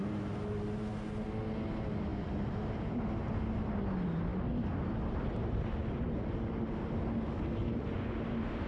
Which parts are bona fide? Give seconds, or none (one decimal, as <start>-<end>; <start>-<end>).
0.0-7.6; 8.2-8.7